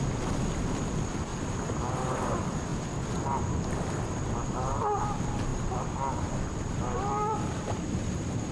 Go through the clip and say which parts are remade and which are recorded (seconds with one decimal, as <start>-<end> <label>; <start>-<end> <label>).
0.0-1.3 remade; 1.3-1.8 recorded; 1.8-2.7 remade; 2.7-3.6 recorded; 3.6-5.5 remade; 5.5-6.2 recorded; 6.2-8.5 remade

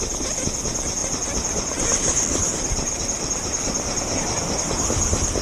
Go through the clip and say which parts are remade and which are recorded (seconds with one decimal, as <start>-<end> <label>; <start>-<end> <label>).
0.0-5.4 remade